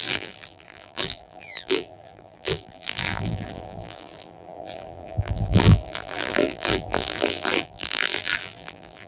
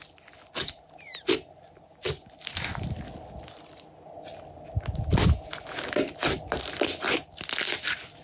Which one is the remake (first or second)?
first